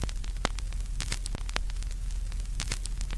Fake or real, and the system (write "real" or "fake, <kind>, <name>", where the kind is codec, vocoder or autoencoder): real